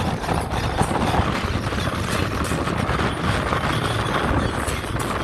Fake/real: real